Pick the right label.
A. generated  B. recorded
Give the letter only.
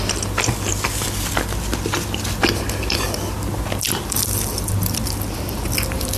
B